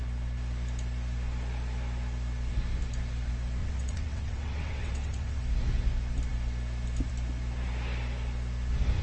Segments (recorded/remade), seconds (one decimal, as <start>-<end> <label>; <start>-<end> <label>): 0.0-3.6 recorded; 3.6-5.4 remade; 5.4-9.0 recorded